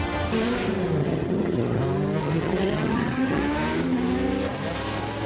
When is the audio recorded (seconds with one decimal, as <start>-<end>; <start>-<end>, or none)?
0.0-1.0; 1.8-2.2; 3.4-5.3

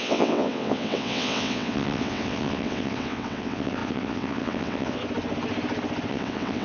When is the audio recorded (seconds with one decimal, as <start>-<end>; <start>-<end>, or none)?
5.0-6.1

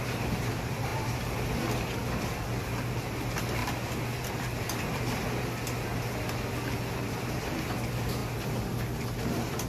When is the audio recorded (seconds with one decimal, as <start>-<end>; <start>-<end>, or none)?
3.6-4.2; 5.9-6.8; 8.2-9.2

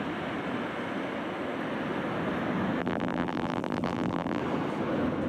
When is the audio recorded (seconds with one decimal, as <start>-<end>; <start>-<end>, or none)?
0.0-2.8; 4.4-5.3